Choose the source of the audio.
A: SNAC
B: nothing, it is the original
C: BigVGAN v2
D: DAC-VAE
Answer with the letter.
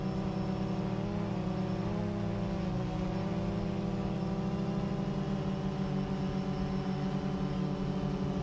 B